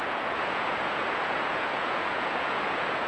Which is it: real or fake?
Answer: fake